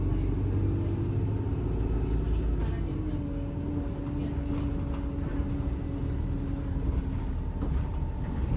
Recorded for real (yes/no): yes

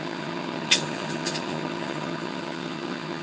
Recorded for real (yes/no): no